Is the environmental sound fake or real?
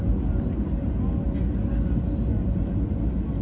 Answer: real